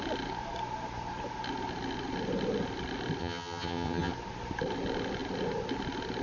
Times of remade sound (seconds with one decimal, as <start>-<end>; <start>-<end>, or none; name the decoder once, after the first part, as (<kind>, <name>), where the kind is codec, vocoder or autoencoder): 3.2-4.1 (vocoder, HiFi-GAN)